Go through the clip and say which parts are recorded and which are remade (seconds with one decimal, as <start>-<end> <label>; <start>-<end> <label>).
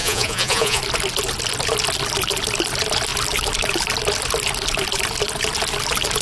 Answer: 0.0-0.8 remade; 0.8-6.2 recorded